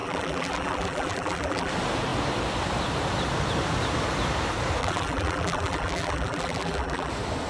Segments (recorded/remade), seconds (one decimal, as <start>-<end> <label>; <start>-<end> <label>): 0.0-1.7 remade; 1.7-4.8 recorded; 4.8-7.1 remade; 7.1-7.5 recorded